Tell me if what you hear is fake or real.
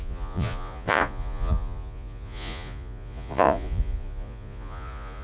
fake